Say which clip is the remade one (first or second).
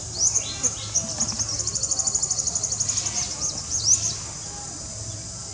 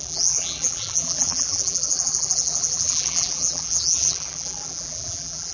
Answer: second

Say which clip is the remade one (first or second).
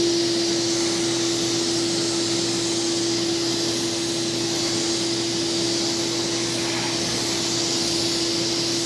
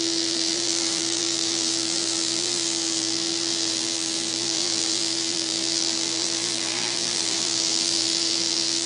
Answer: second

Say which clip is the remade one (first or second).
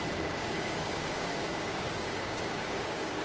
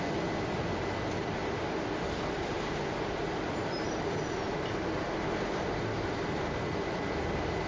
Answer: first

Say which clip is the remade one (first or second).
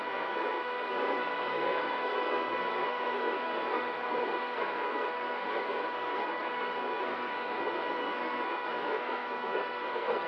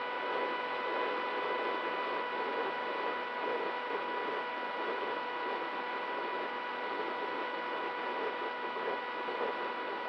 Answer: first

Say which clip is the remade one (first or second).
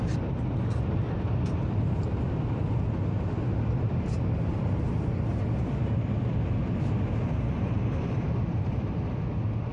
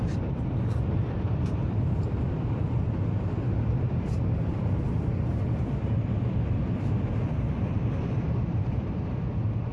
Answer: second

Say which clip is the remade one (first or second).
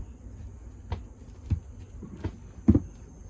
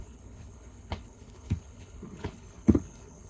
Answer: second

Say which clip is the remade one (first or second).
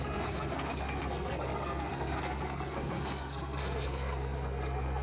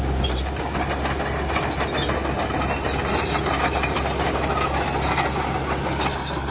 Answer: first